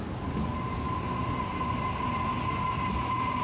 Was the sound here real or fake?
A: real